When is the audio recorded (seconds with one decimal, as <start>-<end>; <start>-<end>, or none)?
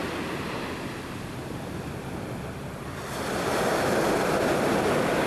0.0-5.3